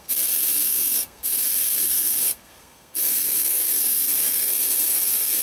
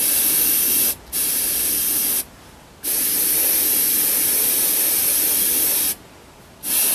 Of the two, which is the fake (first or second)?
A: first